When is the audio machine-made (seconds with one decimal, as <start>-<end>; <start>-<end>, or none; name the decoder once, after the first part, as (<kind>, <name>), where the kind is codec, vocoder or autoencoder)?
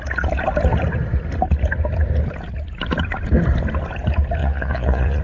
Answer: 4.4-5.2 (vocoder, Vocos)